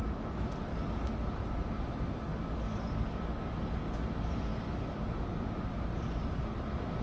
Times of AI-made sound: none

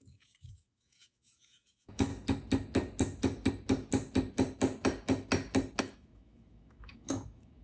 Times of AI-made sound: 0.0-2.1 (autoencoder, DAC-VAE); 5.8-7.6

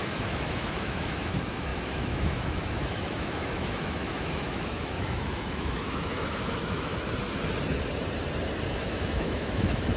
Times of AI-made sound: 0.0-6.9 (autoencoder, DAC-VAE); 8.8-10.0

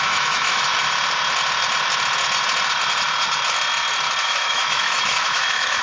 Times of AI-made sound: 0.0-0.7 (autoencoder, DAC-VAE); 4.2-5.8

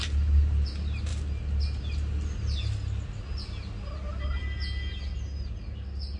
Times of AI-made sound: none

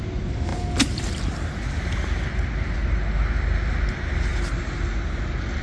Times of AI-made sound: none